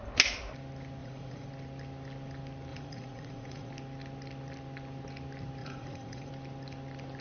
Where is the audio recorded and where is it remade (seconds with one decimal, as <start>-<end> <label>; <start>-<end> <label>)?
0.0-1.0 recorded; 1.0-1.5 remade; 1.5-2.7 recorded; 2.7-3.7 remade; 3.7-5.6 recorded; 5.6-6.3 remade; 6.3-7.2 recorded